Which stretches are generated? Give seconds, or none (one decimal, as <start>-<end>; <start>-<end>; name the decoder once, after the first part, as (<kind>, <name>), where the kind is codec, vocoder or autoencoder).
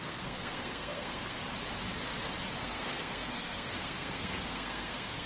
0.0-1.4 (codec, SNAC); 2.6-5.3